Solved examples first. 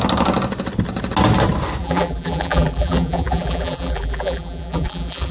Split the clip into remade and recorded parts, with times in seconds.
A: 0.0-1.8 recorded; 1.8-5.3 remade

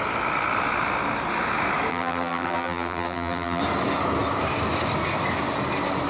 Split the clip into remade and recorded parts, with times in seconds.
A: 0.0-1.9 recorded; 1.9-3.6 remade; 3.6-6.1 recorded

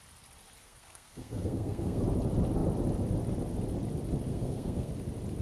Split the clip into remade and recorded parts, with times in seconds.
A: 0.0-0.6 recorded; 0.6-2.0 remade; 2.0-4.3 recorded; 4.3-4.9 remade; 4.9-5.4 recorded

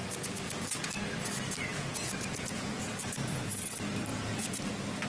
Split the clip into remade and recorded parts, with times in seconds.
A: 0.0-0.9 remade; 0.9-1.7 recorded; 1.7-3.6 remade; 3.6-4.1 recorded; 4.1-4.6 remade; 4.6-5.1 recorded

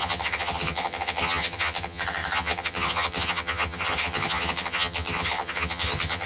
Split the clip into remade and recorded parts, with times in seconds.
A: 0.0-6.3 remade